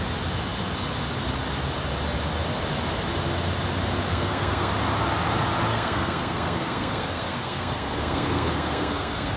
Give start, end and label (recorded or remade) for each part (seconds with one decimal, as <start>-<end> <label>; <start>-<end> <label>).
0.0-4.1 recorded; 4.1-4.7 remade; 4.7-5.7 recorded; 5.7-9.4 remade